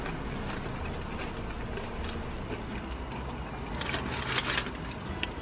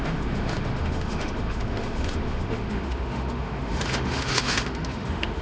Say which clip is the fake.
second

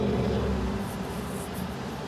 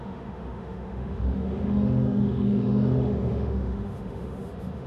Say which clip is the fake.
second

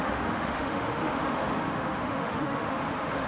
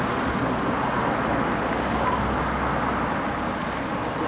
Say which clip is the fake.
first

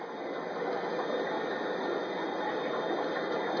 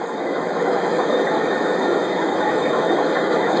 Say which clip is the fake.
second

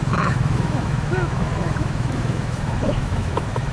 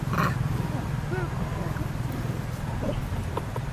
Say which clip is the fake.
first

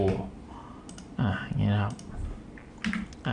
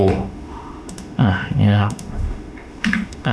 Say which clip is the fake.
second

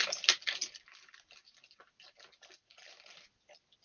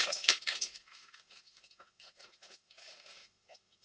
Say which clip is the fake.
second